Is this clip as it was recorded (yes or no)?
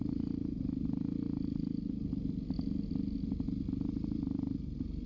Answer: yes